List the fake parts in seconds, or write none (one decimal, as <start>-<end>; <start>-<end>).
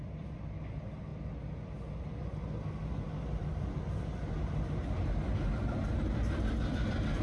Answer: none